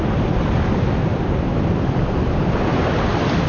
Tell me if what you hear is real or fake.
real